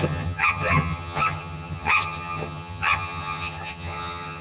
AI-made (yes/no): yes